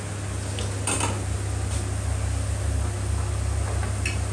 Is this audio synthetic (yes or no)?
no